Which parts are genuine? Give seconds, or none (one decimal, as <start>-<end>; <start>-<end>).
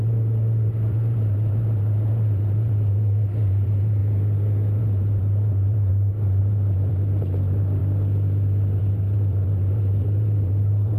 4.0-4.8; 5.9-6.4; 7.8-8.8